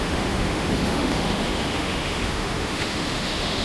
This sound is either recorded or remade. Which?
remade